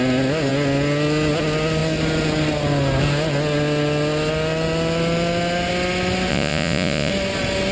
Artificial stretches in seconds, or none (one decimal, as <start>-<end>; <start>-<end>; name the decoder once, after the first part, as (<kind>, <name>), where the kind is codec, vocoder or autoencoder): 6.3-7.1 (vocoder, Vocos)